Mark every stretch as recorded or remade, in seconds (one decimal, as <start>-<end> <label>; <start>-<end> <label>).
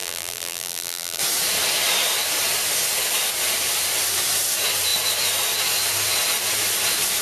0.0-1.2 remade; 1.2-7.2 recorded